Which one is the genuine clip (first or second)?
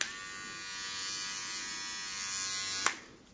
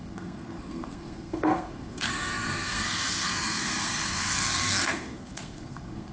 first